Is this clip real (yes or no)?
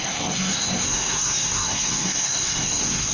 no